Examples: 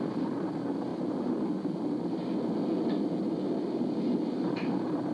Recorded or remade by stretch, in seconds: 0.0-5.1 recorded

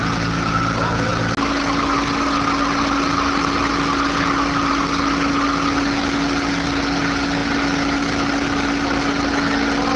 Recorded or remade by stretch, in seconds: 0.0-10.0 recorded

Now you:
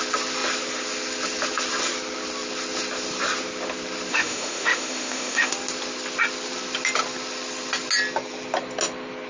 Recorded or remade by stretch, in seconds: 0.0-4.1 recorded; 4.1-5.5 remade; 5.5-9.3 recorded

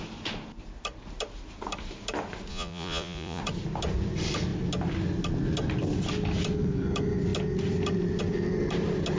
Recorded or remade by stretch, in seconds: 0.0-2.5 recorded; 2.5-3.4 remade; 3.4-9.2 recorded

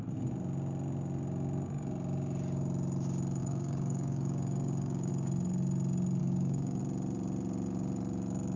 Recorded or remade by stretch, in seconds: 0.0-3.4 recorded; 3.4-5.1 remade; 5.1-6.2 recorded; 6.2-6.8 remade; 6.8-8.6 recorded

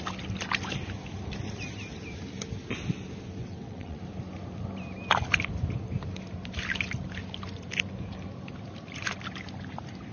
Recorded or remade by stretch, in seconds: 0.0-3.4 recorded; 3.4-4.0 remade; 4.0-10.1 recorded